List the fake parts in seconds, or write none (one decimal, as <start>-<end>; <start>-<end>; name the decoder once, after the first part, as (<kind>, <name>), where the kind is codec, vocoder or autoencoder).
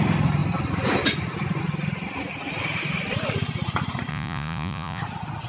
4.1-5.0 (vocoder, Vocos)